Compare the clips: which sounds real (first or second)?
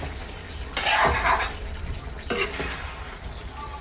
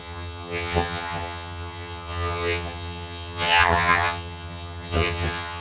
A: first